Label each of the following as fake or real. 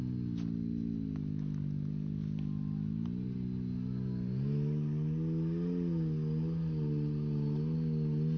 real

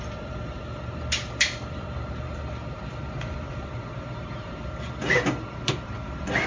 fake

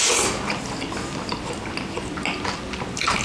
real